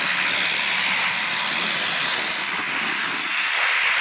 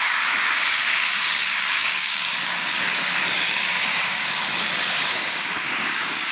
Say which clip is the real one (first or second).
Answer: first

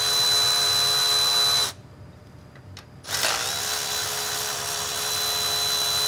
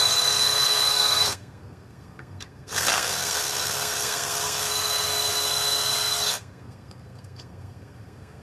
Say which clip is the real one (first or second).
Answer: first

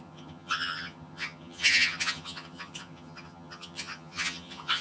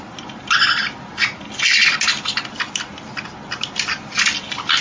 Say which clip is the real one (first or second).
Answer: second